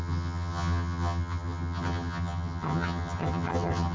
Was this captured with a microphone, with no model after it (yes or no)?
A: no